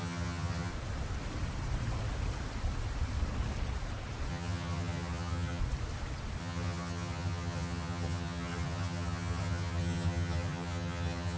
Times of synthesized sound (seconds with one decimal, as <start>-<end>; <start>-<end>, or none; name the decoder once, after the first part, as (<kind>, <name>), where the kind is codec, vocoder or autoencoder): 0.0-0.7 (vocoder, HiFi-GAN); 4.3-5.6; 6.4-11.4